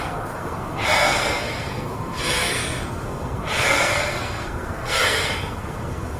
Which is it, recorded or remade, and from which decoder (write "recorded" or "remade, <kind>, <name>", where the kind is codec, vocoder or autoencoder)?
remade, codec, SNAC